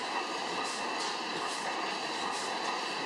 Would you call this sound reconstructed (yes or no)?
no